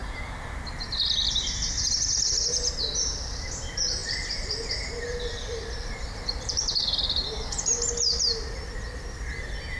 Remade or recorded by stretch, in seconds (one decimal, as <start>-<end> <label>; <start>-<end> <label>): 0.0-4.0 recorded; 4.0-8.2 remade; 8.2-9.8 recorded